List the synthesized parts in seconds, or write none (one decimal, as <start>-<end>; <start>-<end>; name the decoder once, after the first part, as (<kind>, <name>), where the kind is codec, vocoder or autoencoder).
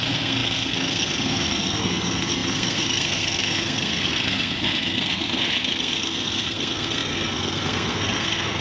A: 0.0-8.6 (codec, SNAC)